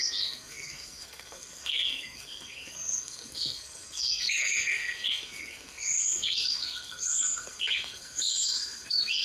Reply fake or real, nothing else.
fake